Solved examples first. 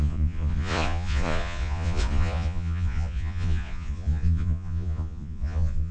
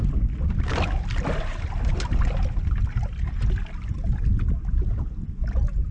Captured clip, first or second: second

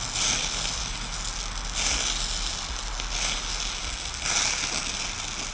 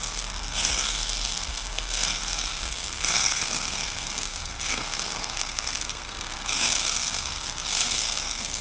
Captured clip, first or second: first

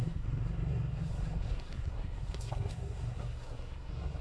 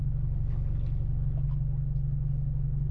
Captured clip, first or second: second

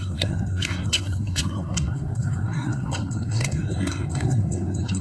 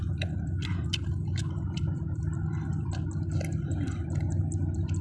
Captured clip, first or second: second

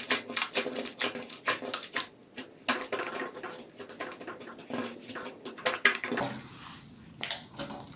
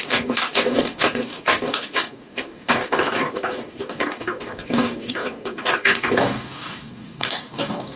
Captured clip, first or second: first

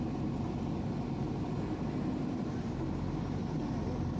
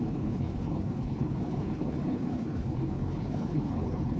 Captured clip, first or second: first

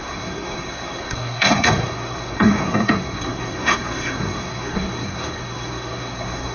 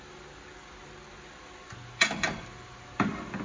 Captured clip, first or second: second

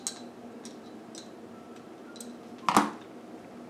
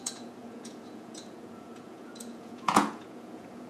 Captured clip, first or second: first